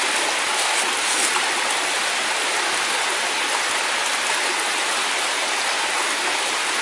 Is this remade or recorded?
recorded